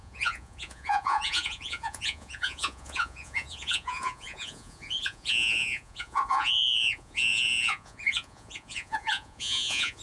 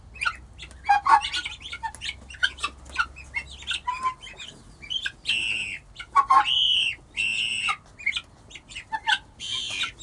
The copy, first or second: first